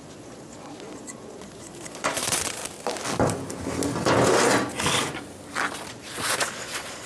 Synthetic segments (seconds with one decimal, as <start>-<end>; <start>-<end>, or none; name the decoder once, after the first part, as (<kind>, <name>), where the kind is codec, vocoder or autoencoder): 0.0-2.6 (vocoder, Vocos); 5.9-7.1